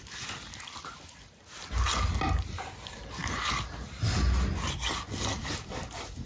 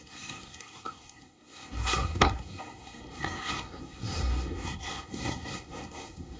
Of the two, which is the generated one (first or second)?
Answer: second